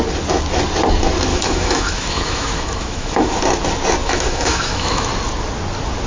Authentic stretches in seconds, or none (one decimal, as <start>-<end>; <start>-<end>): 0.0-1.3; 3.4-4.0; 5.1-6.1